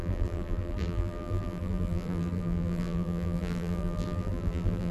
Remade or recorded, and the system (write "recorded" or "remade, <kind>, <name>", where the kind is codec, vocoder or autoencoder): remade, vocoder, BigVGAN v2